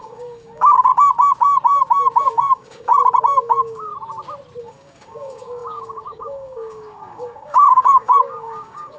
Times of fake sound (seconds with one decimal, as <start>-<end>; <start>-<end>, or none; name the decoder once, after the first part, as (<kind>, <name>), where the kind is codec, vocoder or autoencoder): 0.0-0.9 (codec, DAC); 2.2-2.9; 3.4-3.9; 4.6-9.0